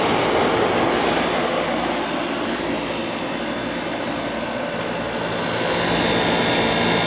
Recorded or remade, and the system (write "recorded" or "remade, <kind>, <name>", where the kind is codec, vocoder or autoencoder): recorded